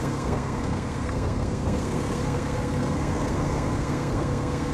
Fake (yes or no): yes